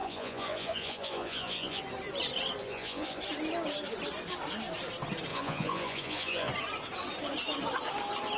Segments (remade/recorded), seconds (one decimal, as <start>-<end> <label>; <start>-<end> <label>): 0.0-1.8 remade; 1.8-2.6 recorded; 2.6-3.2 remade; 3.2-5.3 recorded; 5.3-6.5 remade; 6.5-8.4 recorded